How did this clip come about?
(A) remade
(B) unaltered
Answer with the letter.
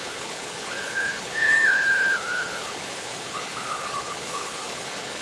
A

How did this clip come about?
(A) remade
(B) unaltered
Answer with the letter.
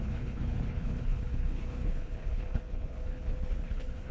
A